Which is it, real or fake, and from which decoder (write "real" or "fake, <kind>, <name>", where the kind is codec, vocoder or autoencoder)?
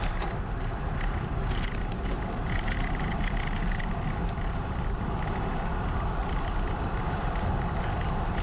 fake, vocoder, BigVGAN v2